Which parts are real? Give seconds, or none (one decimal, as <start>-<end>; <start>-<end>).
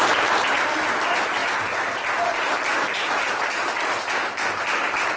0.0-5.2